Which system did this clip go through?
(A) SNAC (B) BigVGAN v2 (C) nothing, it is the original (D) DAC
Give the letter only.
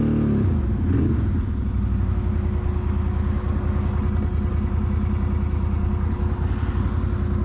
C